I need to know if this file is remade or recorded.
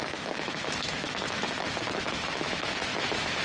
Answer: remade